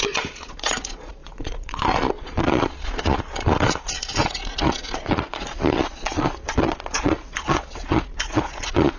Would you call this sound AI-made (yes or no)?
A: yes